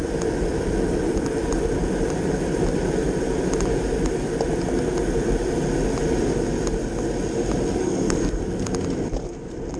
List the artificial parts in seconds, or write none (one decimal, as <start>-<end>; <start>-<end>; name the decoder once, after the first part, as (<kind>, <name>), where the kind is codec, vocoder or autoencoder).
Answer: 7.8-8.4 (codec, SNAC)